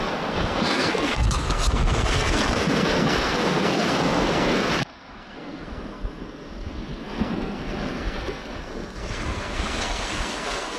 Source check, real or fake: fake